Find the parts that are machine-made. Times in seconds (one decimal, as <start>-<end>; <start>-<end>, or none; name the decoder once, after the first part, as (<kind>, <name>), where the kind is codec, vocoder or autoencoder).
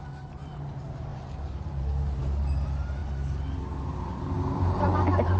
0.0-3.0 (vocoder, BigVGAN v2); 4.0-5.4